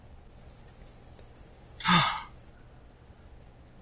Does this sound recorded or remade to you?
recorded